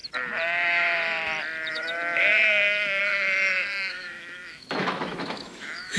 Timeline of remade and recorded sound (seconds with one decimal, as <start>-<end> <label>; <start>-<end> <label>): 0.0-1.7 recorded; 1.7-6.0 remade